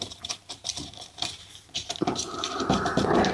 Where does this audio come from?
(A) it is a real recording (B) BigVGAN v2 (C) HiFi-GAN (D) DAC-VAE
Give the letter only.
B